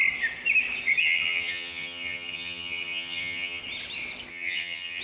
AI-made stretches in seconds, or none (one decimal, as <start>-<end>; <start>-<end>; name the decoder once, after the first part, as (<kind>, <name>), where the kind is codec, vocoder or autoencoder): 1.0-3.6 (vocoder, HiFi-GAN); 4.3-5.0